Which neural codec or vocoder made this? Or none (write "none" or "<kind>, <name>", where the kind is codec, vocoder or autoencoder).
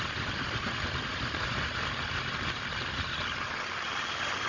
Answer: none